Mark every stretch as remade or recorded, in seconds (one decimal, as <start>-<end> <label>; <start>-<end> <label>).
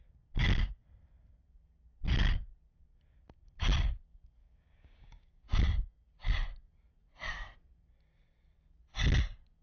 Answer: 0.0-4.4 recorded; 4.4-5.6 remade; 5.6-9.6 recorded